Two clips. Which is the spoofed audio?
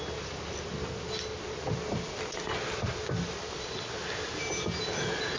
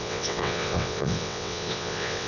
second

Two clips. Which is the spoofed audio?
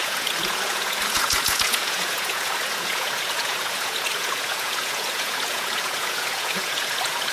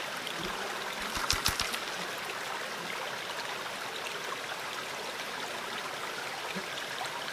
first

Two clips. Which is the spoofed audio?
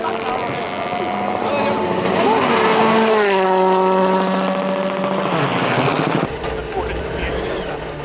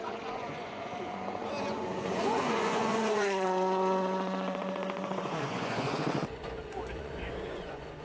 second